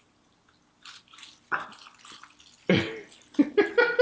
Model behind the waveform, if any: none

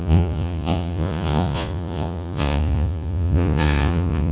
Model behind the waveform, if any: vocoder, Vocos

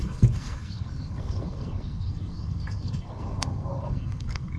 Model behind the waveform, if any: codec, SNAC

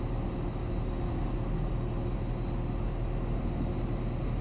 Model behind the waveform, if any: none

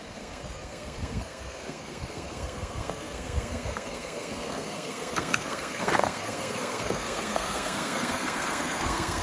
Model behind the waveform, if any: codec, SNAC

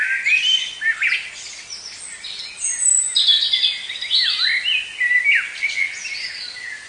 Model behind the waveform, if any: none